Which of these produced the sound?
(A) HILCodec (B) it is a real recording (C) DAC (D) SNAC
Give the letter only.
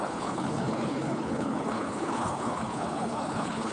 A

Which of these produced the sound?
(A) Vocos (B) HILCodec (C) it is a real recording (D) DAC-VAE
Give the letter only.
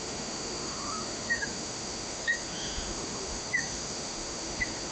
D